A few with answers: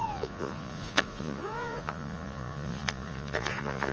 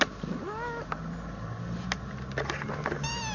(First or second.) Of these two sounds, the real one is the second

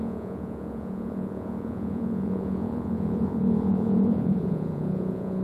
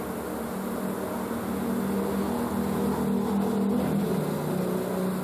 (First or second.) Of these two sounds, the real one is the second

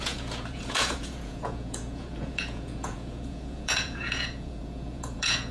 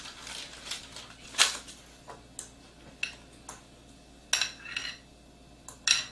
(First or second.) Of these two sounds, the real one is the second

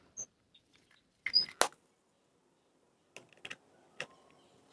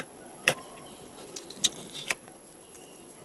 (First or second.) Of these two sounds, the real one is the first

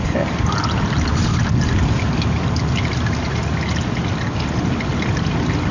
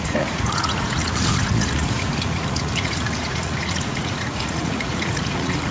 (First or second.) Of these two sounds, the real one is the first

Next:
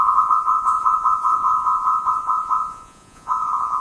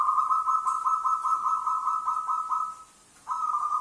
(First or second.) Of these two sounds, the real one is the second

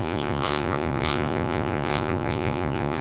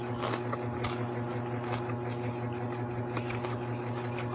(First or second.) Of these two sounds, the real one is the second